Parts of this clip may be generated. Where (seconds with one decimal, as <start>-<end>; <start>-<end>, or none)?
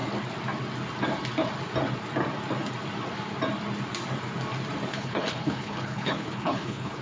4.9-7.0